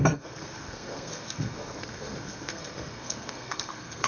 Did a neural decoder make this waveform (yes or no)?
yes